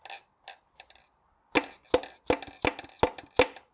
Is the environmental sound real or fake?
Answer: real